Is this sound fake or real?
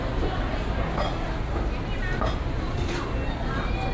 real